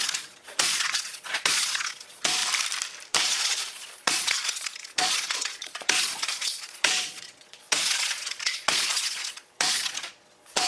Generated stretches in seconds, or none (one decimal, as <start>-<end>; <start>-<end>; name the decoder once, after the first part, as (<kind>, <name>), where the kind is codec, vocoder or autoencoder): 0.0-2.4 (vocoder, Vocos); 3.2-10.7